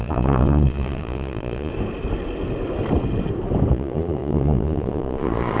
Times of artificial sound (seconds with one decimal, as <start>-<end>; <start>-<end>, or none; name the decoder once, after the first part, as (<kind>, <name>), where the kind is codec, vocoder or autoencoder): 0.0-1.7 (vocoder, Vocos); 3.7-5.6